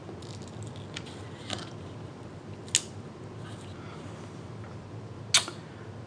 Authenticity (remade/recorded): recorded